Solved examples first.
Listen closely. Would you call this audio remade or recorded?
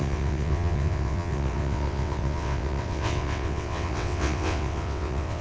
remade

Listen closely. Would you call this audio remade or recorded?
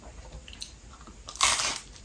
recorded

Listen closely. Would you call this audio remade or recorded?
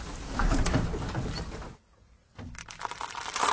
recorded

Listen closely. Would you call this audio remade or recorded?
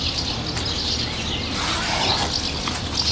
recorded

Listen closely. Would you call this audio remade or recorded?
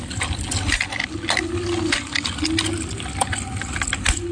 recorded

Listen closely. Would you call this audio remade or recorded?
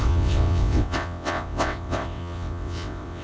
remade